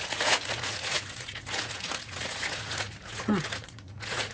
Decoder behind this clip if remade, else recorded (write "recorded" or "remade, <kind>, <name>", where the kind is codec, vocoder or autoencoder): remade, vocoder, Vocos